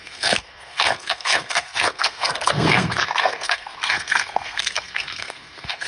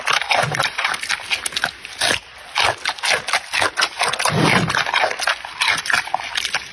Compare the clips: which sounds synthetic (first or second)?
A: first